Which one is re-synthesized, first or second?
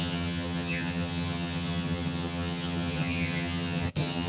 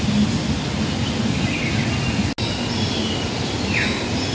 first